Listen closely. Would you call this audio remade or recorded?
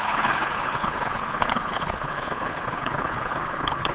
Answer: remade